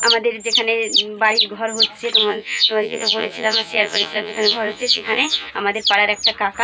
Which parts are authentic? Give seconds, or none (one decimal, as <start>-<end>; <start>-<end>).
0.0-2.2; 5.5-6.6